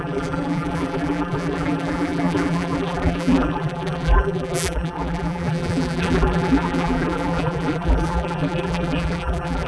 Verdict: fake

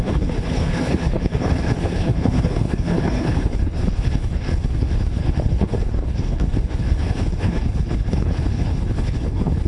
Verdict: fake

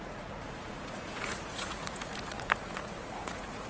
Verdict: fake